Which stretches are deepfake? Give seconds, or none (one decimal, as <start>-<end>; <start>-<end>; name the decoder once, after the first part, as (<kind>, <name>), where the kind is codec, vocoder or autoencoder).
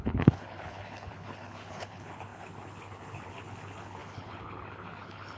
0.0-5.4 (codec, HILCodec)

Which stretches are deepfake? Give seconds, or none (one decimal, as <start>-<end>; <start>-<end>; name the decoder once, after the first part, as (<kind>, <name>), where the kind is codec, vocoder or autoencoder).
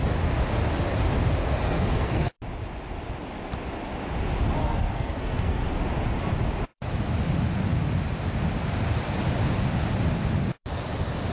1.4-2.3 (codec, SNAC); 4.6-5.6